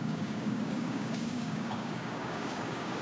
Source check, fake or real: fake